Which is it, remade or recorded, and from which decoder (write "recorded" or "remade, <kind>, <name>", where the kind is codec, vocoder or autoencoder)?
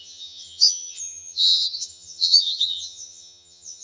remade, vocoder, HiFi-GAN